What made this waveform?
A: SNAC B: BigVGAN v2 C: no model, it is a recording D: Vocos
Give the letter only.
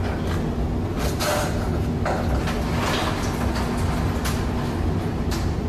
C